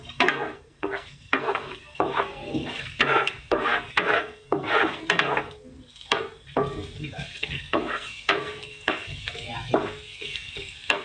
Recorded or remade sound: remade